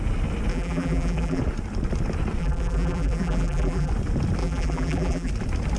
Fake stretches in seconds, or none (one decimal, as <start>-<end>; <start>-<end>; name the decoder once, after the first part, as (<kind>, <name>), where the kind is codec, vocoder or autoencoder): 0.5-1.4 (vocoder, BigVGAN v2); 2.4-3.9; 4.4-5.3